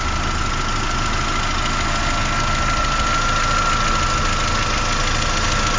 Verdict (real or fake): real